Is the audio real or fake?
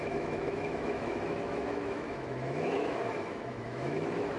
fake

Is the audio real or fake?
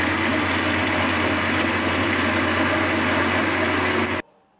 real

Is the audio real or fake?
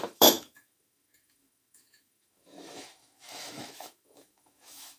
fake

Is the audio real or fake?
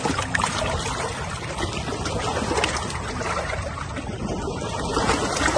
real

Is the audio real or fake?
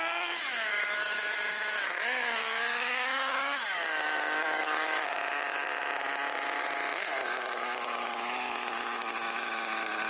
fake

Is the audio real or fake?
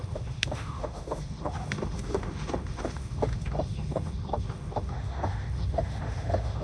fake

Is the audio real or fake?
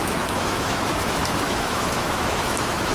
fake